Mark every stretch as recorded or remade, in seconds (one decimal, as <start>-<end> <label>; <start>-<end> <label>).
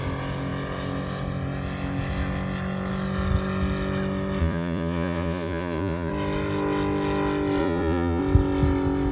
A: 0.0-4.4 recorded; 4.4-6.1 remade; 6.1-7.6 recorded; 7.6-8.2 remade; 8.2-9.1 recorded